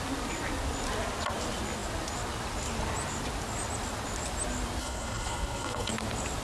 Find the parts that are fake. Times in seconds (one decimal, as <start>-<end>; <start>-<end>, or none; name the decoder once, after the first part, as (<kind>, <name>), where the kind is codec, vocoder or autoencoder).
4.8-5.9 (codec, HILCodec)